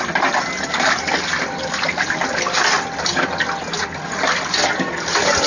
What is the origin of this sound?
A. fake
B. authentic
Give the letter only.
B